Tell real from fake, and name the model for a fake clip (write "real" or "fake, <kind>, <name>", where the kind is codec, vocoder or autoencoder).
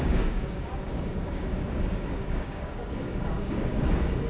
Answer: fake, codec, DAC